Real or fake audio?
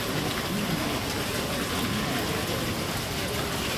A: real